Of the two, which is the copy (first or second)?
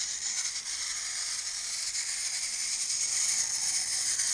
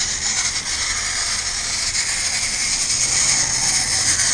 first